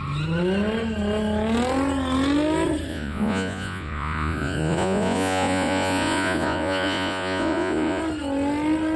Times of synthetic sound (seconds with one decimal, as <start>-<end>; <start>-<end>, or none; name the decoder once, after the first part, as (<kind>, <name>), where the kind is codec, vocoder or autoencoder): 2.9-8.0 (vocoder, Vocos)